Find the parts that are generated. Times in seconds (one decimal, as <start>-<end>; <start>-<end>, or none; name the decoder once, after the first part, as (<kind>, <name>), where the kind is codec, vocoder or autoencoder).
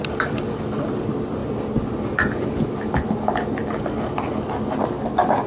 none